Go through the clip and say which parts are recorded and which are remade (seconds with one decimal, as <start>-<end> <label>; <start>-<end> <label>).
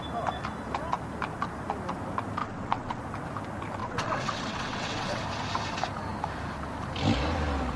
0.0-2.4 recorded; 2.4-3.0 remade; 3.0-3.8 recorded; 3.8-5.2 remade; 5.2-7.8 recorded